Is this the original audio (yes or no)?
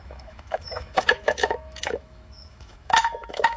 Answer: no